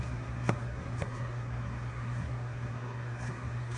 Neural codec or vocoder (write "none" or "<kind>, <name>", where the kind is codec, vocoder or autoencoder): codec, SNAC